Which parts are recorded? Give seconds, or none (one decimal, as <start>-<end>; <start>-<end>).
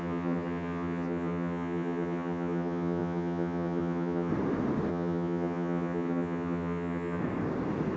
4.3-4.9; 7.2-8.0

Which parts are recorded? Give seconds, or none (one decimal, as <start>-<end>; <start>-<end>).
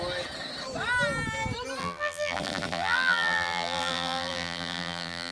0.0-1.8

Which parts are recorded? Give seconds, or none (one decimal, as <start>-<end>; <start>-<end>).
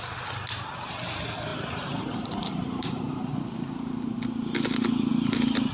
0.0-1.5; 4.2-5.1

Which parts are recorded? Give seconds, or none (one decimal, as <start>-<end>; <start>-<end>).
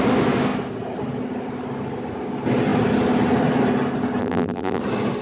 0.0-4.2; 4.8-5.2